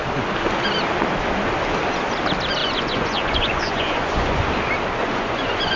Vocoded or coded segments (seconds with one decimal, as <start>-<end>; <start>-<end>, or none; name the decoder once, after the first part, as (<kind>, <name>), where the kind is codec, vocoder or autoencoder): 2.6-4.5 (vocoder, Vocos); 5.0-5.8

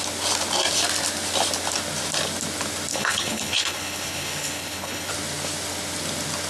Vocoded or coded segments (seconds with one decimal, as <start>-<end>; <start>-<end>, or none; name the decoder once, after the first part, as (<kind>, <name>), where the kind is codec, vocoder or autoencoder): 2.9-5.1 (codec, HILCodec)

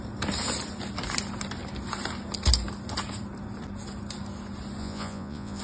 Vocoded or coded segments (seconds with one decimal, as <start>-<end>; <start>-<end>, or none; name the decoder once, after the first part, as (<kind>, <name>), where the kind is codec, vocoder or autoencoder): 4.8-5.6 (vocoder, Vocos)

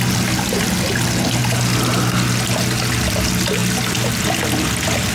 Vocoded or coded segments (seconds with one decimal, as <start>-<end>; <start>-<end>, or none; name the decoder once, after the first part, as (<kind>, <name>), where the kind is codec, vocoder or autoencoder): none

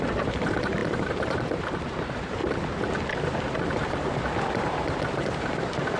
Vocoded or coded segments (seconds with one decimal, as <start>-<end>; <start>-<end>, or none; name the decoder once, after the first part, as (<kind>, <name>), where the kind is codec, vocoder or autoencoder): 0.0-2.4 (vocoder, BigVGAN v2); 4.4-6.0

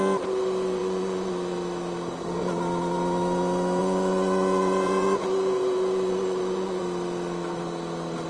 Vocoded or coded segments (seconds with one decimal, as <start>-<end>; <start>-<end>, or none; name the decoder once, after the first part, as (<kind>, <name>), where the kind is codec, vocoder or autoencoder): 0.8-1.3 (vocoder, Vocos); 3.8-6.8

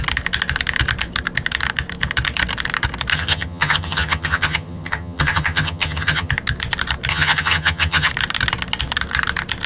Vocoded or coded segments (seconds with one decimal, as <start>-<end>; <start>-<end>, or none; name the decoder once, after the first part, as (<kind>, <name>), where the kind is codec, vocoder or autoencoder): 3.1-6.3 (vocoder, HiFi-GAN); 7.1-8.1

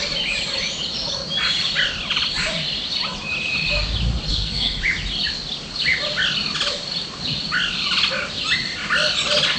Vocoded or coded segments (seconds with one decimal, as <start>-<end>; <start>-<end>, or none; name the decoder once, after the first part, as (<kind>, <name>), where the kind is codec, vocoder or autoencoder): 4.3-4.8 (codec, SNAC)